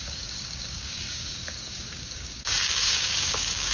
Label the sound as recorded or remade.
remade